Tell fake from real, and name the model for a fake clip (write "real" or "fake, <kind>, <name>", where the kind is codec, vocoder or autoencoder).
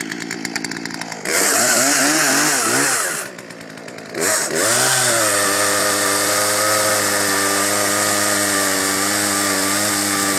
real